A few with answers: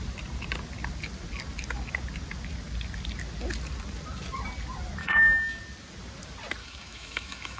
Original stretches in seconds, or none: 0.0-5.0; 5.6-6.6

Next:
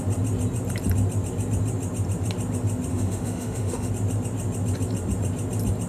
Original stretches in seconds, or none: 0.0-2.9; 3.9-5.9

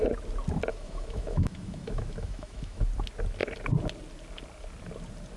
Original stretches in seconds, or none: 0.0-0.7; 2.8-5.4

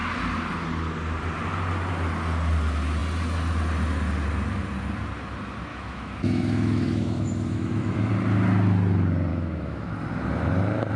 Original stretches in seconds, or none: 0.0-5.7; 8.1-9.3; 9.9-11.0

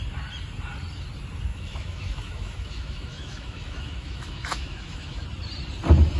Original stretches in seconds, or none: 0.0-1.5; 5.2-6.2

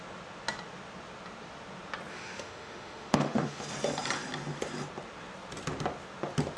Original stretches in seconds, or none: 0.0-2.1; 3.6-6.6

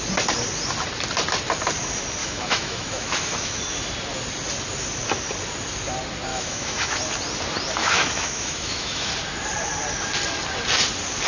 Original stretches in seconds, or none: 0.0-2.2; 3.6-6.3; 7.0-7.8; 9.1-11.3

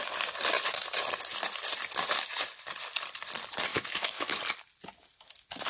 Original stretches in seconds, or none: 0.0-3.7; 4.4-5.7